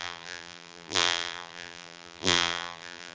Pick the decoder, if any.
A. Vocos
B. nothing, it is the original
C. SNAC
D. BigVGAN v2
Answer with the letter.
D